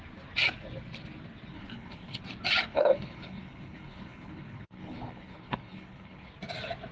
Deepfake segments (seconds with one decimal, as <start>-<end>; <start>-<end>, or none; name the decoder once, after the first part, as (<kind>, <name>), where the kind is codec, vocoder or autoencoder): 1.5-2.2 (codec, HILCodec); 2.7-6.3